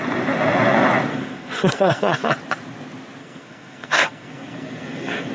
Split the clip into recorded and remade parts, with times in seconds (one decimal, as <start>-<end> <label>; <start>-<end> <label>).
0.0-1.1 recorded; 1.1-2.3 remade; 2.3-3.2 recorded; 3.2-5.3 remade